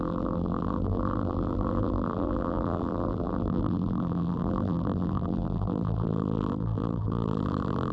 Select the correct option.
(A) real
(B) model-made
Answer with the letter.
B